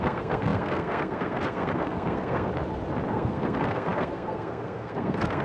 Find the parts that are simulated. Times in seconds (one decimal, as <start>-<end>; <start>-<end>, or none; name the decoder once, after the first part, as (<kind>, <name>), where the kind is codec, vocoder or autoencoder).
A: 0.0-2.5 (codec, SNAC); 3.1-5.4